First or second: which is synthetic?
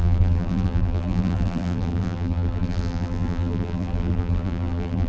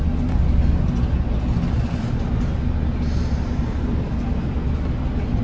first